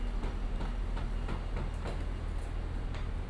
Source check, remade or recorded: recorded